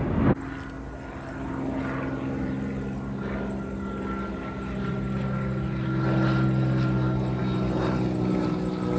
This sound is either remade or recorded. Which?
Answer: recorded